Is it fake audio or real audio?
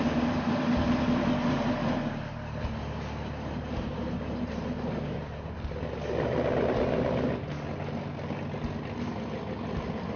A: real